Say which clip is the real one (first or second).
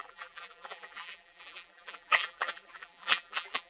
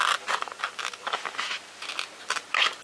second